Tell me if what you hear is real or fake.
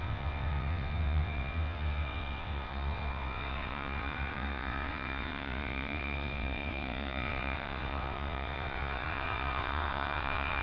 fake